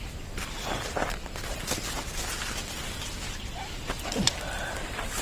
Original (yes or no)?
no